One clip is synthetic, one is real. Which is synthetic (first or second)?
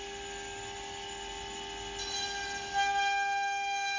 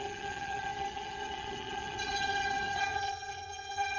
second